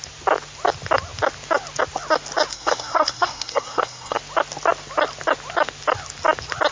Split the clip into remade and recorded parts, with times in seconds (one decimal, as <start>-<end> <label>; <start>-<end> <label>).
0.0-2.5 recorded; 2.5-4.2 remade; 4.2-6.7 recorded